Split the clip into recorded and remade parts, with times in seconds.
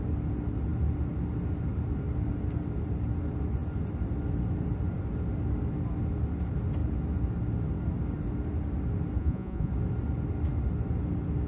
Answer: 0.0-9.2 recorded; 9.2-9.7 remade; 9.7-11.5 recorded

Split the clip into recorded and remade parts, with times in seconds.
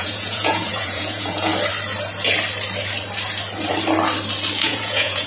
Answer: 0.0-1.5 remade; 1.5-4.6 recorded; 4.6-5.3 remade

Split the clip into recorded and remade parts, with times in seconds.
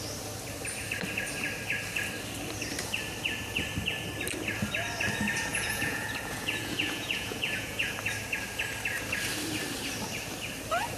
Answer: 0.0-5.5 recorded; 5.5-7.9 remade; 7.9-11.0 recorded